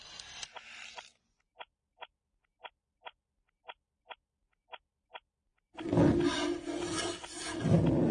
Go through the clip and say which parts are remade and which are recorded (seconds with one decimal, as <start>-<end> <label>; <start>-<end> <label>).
0.0-8.1 recorded